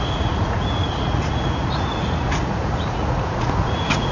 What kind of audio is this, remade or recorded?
remade